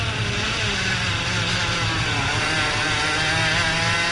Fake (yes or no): no